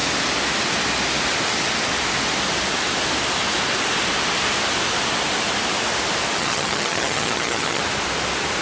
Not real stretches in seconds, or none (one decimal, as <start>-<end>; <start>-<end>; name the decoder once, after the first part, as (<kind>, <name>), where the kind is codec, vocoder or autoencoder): 6.4-7.8 (vocoder, HiFi-GAN)